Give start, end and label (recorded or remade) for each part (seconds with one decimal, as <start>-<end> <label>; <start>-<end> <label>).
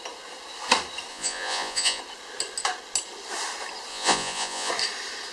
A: 0.0-1.1 recorded; 1.1-2.0 remade; 2.0-3.9 recorded; 3.9-4.7 remade; 4.7-5.3 recorded